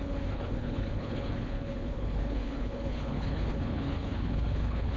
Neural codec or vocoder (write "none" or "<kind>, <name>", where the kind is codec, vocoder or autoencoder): codec, HILCodec